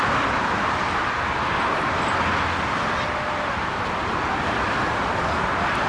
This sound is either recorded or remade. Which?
recorded